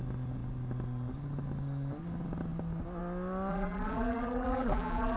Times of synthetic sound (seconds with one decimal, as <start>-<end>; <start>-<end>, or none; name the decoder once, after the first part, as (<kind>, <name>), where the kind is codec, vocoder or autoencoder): 3.5-5.2 (vocoder, BigVGAN v2)